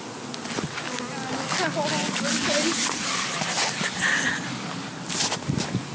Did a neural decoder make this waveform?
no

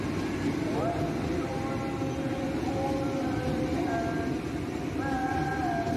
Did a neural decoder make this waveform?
no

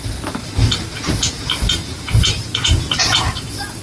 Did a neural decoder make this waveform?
yes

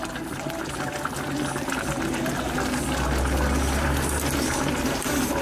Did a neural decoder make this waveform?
no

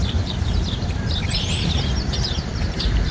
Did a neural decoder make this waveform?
yes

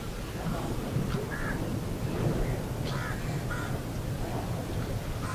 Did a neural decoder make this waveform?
no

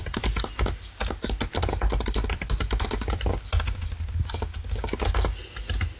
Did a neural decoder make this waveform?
no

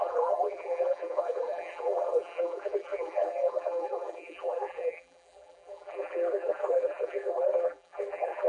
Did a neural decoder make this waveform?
yes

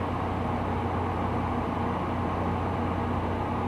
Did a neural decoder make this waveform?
no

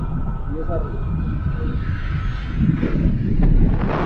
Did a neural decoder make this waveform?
no